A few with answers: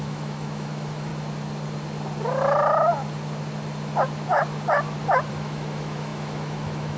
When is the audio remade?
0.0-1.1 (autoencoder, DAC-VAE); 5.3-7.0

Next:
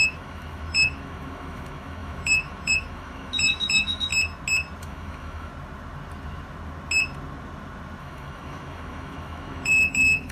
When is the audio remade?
0.0-4.1 (autoencoder, DAC-VAE); 4.8-5.5; 8.0-10.3

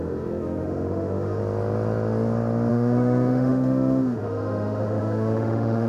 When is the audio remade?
0.0-1.4 (autoencoder, DAC-VAE); 2.7-5.9